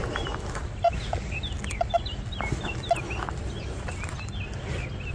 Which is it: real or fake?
real